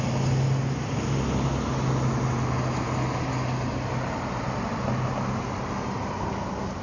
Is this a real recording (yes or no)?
yes